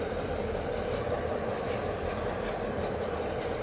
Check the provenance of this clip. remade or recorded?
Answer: remade